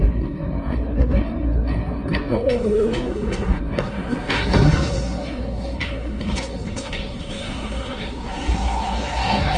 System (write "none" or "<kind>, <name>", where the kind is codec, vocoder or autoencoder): codec, SNAC